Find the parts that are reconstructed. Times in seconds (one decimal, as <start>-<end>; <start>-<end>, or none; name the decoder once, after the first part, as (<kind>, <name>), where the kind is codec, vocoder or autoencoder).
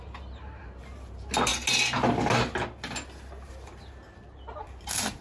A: 0.0-1.5 (vocoder, BigVGAN v2); 4.6-5.2